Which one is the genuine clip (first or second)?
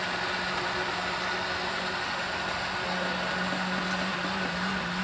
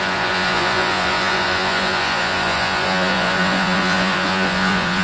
first